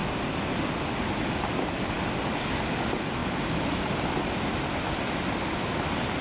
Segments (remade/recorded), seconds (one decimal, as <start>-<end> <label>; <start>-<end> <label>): 0.0-6.2 recorded